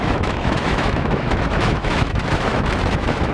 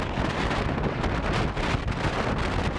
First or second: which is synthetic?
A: first